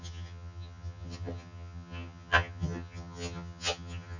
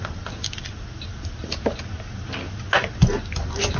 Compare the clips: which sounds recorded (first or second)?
second